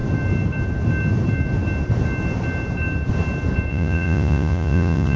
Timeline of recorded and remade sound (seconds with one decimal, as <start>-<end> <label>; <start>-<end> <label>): 0.0-3.7 recorded; 3.7-5.2 remade